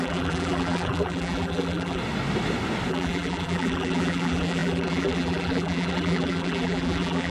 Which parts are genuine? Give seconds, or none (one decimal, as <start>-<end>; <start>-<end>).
2.0-2.9